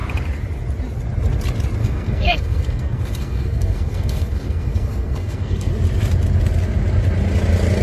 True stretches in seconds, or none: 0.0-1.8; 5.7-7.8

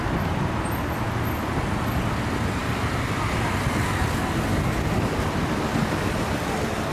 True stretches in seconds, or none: 0.0-6.9

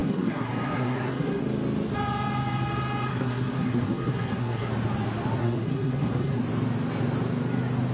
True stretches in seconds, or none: 1.4-3.1; 4.7-5.4; 6.4-7.9

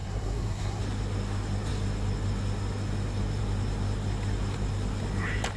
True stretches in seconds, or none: 0.8-5.6